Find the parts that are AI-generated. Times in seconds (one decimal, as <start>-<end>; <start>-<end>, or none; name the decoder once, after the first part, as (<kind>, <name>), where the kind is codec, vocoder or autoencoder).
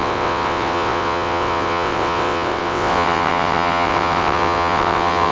0.0-5.3 (vocoder, WaveNeXt)